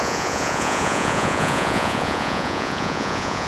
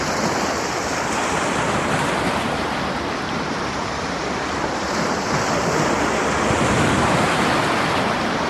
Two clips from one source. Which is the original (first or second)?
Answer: second